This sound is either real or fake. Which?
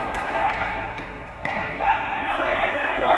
fake